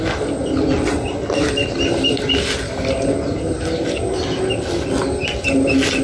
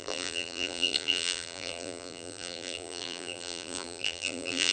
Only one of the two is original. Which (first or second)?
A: first